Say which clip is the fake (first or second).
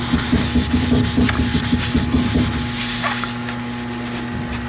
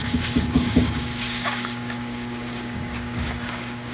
second